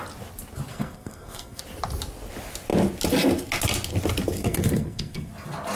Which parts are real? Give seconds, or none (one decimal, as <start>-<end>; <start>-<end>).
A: 0.0-0.7; 1.6-4.4; 5.3-5.8